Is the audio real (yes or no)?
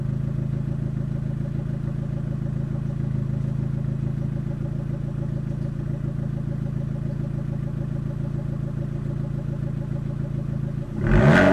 yes